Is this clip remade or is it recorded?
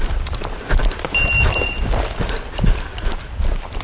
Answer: recorded